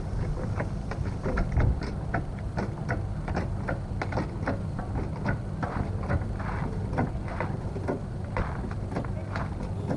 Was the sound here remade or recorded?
remade